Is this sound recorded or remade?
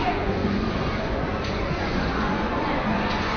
remade